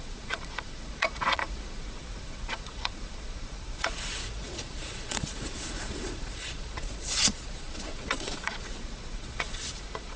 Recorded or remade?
remade